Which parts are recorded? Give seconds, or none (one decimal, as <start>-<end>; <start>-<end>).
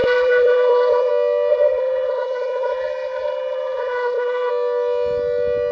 1.1-1.5; 4.5-5.7